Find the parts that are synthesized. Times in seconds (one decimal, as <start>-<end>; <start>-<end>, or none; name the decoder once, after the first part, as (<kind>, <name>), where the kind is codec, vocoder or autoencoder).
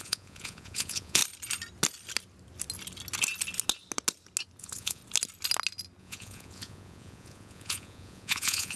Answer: 0.0-1.2 (vocoder, Vocos); 4.6-5.0; 6.0-8.8